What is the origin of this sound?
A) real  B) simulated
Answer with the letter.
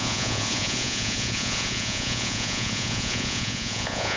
B